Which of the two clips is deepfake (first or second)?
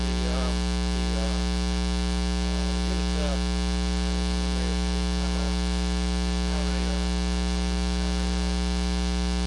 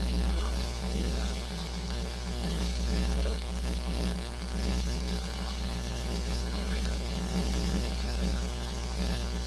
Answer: second